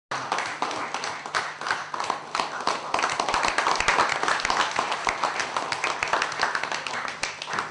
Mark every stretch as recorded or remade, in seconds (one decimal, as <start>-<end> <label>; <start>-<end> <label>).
0.0-7.7 recorded